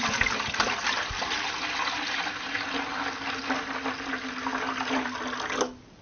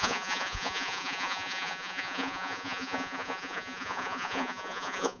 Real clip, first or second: first